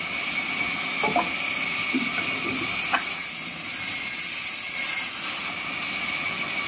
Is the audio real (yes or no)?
yes